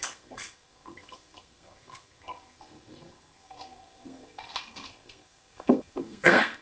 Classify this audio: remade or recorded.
remade